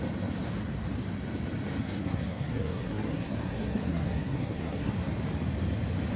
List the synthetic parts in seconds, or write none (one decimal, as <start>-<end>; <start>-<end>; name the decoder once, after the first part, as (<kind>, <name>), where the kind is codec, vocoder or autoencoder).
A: 1.8-4.9 (codec, SNAC)